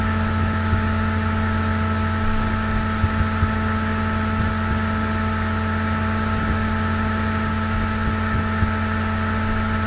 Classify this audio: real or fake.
real